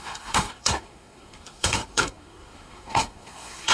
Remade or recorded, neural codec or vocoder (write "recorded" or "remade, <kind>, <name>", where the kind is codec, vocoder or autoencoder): remade, codec, SNAC